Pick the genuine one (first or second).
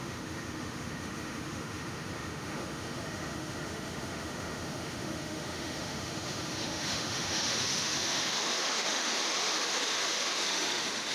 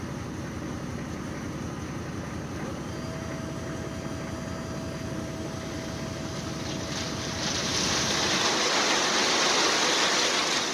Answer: second